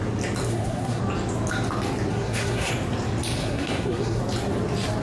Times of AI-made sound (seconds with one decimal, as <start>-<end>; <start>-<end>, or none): 0.5-1.0; 2.1-2.7; 3.4-4.2